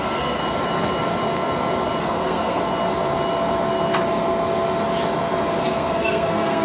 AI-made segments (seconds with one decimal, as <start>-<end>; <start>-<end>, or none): 0.0-0.4; 2.0-2.6; 5.6-6.6

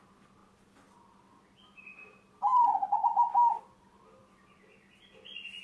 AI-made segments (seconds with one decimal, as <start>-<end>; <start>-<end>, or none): none

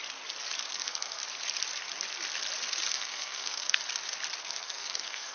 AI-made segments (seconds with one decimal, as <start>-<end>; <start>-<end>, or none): 0.7-1.2; 2.9-3.8; 4.4-5.3